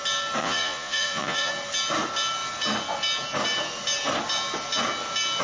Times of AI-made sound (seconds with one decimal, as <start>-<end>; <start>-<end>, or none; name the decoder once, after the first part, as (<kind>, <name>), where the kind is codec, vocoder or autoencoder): 0.4-1.5 (vocoder, Vocos)